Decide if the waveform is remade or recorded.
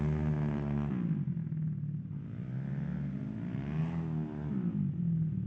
recorded